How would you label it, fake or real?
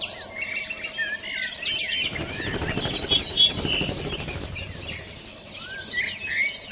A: real